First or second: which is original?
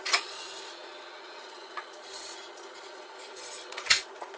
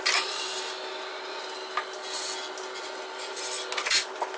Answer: second